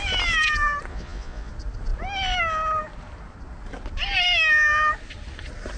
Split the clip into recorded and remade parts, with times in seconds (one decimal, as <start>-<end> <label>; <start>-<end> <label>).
0.0-0.9 recorded; 0.9-1.5 remade; 1.5-5.8 recorded